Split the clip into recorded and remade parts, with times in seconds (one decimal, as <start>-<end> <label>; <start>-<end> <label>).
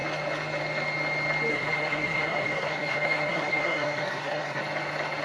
0.0-1.5 recorded; 1.5-4.6 remade; 4.6-5.2 recorded